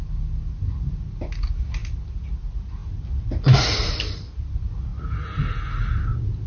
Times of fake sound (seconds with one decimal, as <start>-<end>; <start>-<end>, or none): none